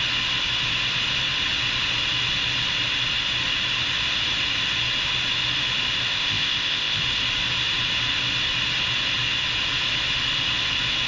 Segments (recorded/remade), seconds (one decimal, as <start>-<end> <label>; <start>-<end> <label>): 0.0-6.1 recorded; 6.1-7.0 remade; 7.0-11.1 recorded